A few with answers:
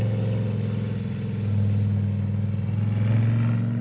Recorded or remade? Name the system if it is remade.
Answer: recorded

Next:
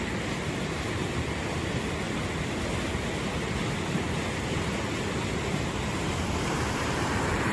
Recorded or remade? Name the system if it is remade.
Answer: recorded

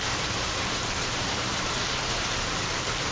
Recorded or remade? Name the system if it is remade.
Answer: remade, vocoder, BigVGAN v2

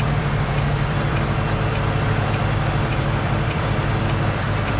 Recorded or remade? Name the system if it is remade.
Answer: remade, vocoder, BigVGAN v2